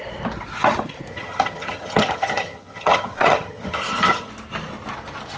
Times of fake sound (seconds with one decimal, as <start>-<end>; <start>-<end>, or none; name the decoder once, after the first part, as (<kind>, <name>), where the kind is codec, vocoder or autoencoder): 1.1-4.3 (vocoder, HiFi-GAN)